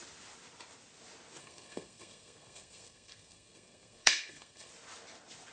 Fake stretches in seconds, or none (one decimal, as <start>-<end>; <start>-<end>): 1.4-4.7